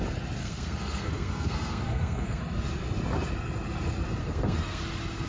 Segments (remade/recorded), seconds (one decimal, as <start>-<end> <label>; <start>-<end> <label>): 0.0-0.4 recorded; 0.4-2.4 remade; 2.4-4.2 recorded; 4.2-4.8 remade; 4.8-5.3 recorded